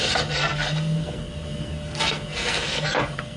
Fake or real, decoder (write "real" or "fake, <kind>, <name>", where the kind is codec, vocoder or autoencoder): fake, codec, SNAC